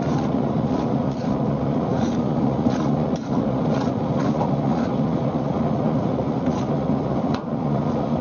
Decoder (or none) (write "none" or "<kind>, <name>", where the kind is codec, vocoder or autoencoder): vocoder, Vocos